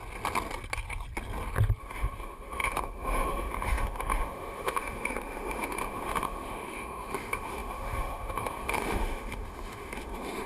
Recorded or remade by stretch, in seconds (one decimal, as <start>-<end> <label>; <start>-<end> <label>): 0.0-1.8 recorded; 1.8-10.5 remade